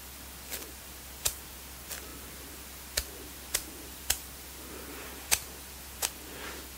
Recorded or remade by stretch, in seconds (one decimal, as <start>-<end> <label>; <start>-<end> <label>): 0.0-2.1 recorded; 2.1-6.0 remade; 6.0-6.8 recorded